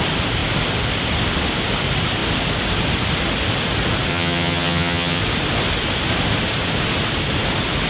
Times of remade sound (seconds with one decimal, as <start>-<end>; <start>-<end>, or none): 4.1-5.2